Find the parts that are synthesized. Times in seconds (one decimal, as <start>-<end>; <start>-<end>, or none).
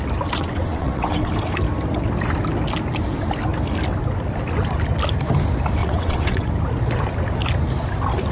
0.4-1.3; 5.8-6.5